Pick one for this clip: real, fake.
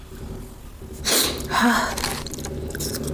real